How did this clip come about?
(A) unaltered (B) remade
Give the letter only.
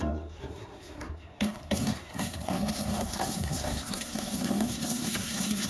B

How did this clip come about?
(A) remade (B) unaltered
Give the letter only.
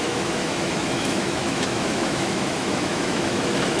A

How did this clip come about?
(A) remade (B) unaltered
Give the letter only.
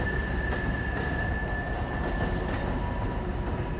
B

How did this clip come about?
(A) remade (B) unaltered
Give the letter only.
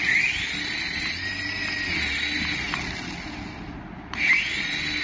B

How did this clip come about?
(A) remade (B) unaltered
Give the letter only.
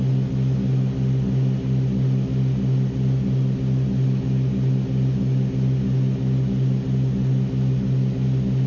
B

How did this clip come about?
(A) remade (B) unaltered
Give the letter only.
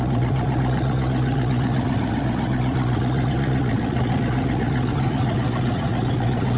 A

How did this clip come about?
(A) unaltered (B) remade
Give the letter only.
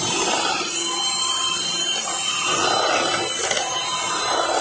A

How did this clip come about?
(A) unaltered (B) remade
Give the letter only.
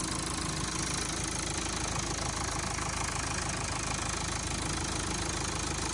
A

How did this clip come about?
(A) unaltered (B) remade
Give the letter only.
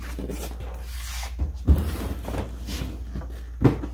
A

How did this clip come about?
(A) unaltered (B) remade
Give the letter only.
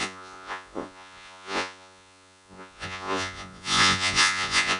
B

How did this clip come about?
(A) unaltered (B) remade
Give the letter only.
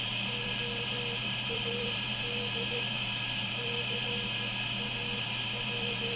B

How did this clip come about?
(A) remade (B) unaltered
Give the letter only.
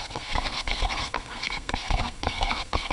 A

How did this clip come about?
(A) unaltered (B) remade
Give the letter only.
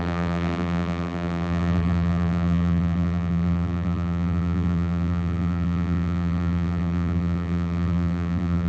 B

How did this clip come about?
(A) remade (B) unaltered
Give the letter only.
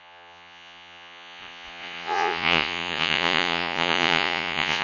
A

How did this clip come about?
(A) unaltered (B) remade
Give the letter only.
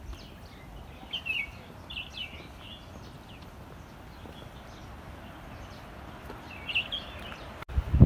A